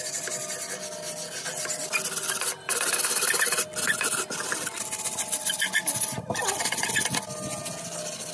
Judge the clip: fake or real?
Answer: real